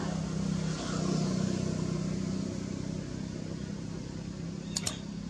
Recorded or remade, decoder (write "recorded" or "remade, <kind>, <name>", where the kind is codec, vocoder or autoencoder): recorded